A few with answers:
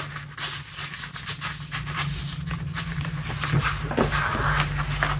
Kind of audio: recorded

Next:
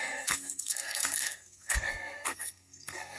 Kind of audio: remade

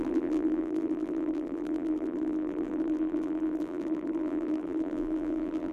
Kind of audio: remade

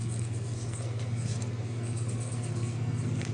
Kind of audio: remade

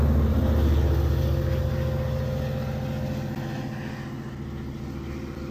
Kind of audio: recorded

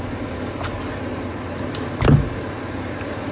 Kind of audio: recorded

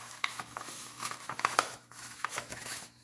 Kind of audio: remade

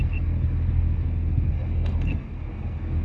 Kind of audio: remade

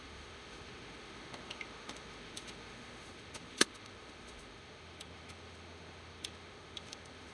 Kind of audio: remade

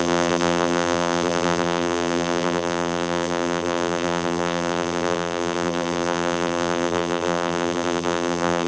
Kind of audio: remade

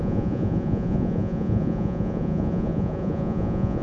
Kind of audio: remade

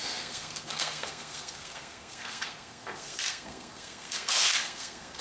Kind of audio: remade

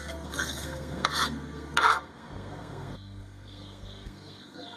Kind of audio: remade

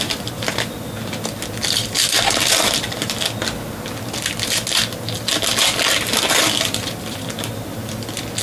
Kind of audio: recorded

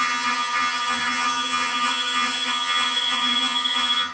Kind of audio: remade